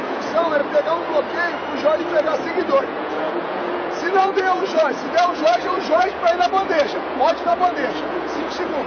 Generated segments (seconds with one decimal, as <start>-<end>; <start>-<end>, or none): 0.0-0.6; 2.8-8.9